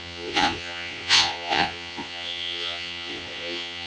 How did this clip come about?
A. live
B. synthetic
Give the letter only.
B